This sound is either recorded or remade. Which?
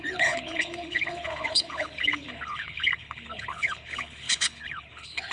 remade